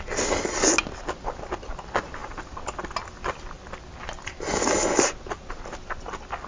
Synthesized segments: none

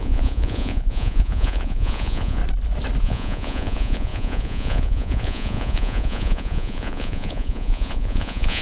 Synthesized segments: 0.0-2.4; 3.0-8.6